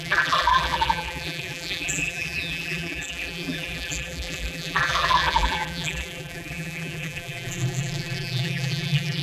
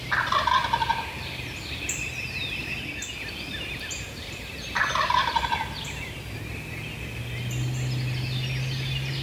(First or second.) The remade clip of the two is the first